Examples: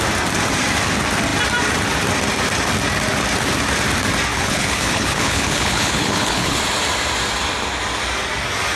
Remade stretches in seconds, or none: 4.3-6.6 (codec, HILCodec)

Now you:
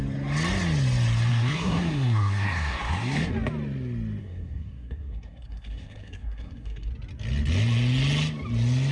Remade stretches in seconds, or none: 1.3-3.3 (codec, SNAC); 4.2-6.9

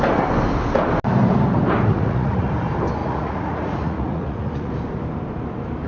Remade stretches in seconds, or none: 1.9-2.5 (vocoder, Vocos); 3.0-4.7

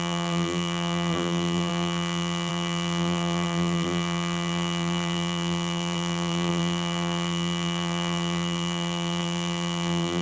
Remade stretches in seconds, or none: 0.0-10.2 (vocoder, BigVGAN v2)

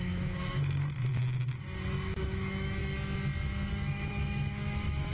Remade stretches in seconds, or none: 0.0-1.1 (autoencoder, DAC-VAE); 2.2-2.8; 3.7-5.1

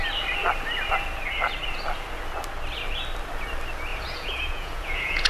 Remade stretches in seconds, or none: 3.9-5.3 (vocoder, Vocos)

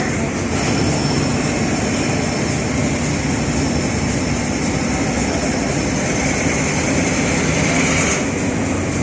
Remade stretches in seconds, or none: none

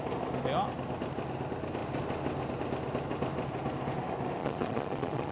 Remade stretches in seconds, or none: 4.4-5.3 (vocoder, Vocos)